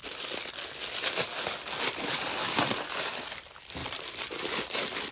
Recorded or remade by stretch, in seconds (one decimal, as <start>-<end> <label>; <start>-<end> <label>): 0.0-3.1 recorded; 3.1-5.1 remade